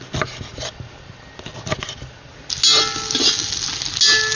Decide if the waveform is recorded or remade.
recorded